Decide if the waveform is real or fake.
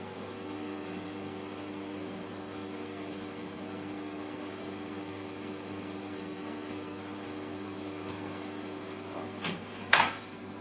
fake